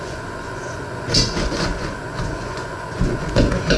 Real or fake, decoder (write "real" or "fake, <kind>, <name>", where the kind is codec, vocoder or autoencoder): fake, vocoder, Vocos